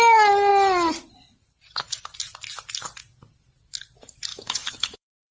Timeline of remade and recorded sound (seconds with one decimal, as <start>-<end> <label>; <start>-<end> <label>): 0.0-4.3 recorded; 4.3-5.3 remade